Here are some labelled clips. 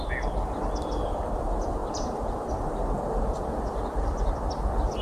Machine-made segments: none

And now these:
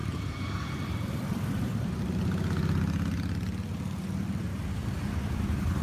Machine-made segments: 0.0-1.9 (vocoder, BigVGAN v2); 4.5-5.8